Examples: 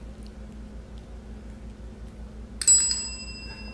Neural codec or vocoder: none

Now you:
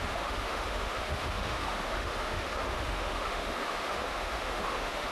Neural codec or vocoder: autoencoder, DAC-VAE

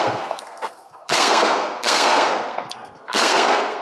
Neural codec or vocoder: codec, SNAC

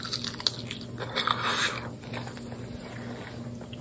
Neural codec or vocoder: none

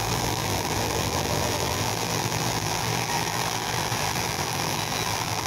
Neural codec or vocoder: vocoder, BigVGAN v2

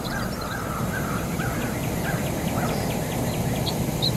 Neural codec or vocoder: vocoder, BigVGAN v2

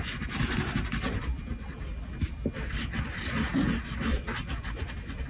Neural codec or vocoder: none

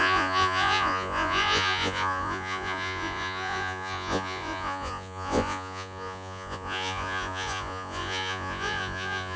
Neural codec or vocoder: vocoder, Vocos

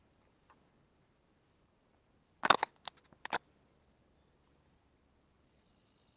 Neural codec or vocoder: none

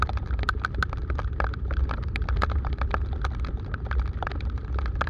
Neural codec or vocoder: none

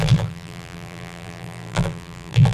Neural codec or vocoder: vocoder, BigVGAN v2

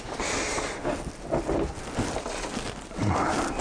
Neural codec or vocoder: none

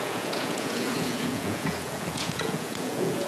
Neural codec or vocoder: vocoder, Vocos